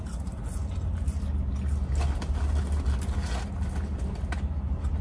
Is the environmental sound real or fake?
real